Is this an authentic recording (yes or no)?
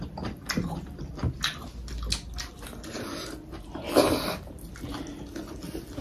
yes